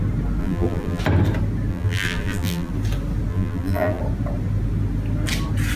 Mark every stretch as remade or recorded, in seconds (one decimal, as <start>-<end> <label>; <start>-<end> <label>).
0.0-0.4 recorded; 0.4-1.0 remade; 1.0-1.7 recorded; 1.7-2.7 remade; 2.7-3.3 recorded; 3.3-4.0 remade; 4.0-5.8 recorded